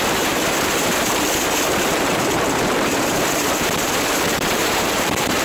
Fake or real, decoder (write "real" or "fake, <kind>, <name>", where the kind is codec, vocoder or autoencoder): fake, vocoder, BigVGAN v2